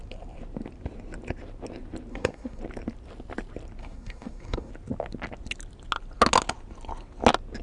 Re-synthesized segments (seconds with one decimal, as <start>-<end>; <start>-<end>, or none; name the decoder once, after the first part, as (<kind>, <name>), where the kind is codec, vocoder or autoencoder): 2.1-2.6 (codec, SNAC); 3.8-4.7